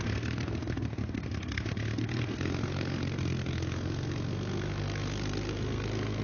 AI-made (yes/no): yes